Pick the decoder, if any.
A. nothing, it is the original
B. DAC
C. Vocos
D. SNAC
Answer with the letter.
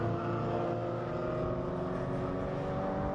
A